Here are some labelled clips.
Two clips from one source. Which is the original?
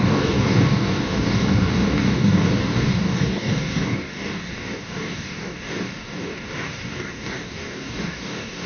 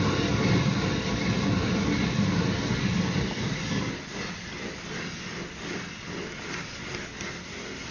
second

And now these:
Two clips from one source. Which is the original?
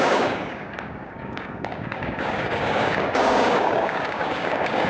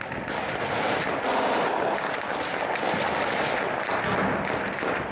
second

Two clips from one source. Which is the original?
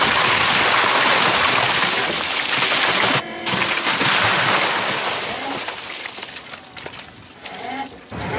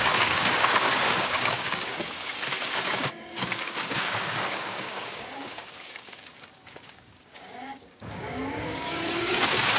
first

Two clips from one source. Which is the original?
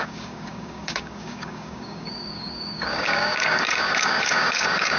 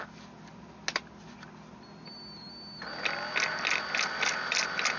second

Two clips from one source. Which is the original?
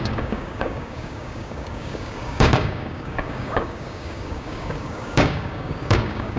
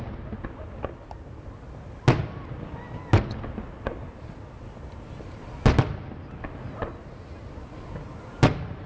second